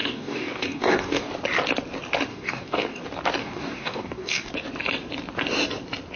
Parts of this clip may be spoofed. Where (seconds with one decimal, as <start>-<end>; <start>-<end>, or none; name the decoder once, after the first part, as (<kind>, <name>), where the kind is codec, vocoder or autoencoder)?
0.0-1.3 (codec, DAC); 2.3-3.0; 3.4-4.5